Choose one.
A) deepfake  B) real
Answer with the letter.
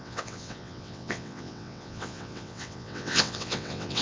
A